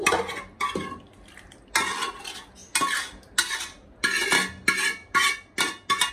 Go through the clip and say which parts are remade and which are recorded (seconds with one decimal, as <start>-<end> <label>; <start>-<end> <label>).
0.0-6.1 recorded